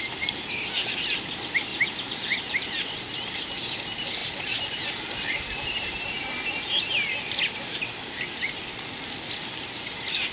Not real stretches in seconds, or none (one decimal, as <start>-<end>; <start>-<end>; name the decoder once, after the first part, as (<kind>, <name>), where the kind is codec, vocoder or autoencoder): 1.7-3.0 (vocoder, BigVGAN v2); 4.2-6.9